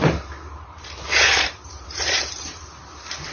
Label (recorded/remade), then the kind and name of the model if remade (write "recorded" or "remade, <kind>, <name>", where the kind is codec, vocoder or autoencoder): remade, vocoder, BigVGAN v2